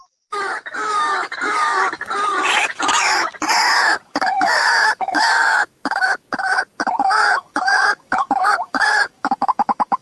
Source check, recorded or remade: remade